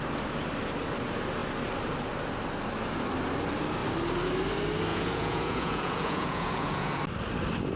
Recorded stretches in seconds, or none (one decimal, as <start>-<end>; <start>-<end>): 0.0-4.9; 7.0-7.8